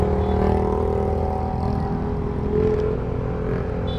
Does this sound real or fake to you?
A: real